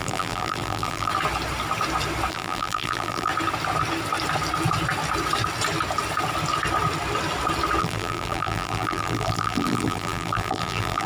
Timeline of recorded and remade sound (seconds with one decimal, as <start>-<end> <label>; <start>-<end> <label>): 0.0-1.1 remade; 1.1-2.3 recorded; 2.3-3.3 remade; 3.3-7.8 recorded; 7.8-11.1 remade